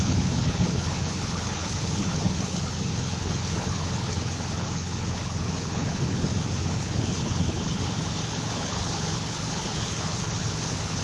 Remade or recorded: remade